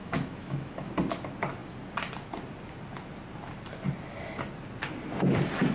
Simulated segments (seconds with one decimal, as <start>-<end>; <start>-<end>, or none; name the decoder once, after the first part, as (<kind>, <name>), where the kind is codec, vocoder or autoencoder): 0.0-0.9 (autoencoder, DAC-VAE)